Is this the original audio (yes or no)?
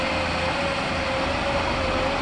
yes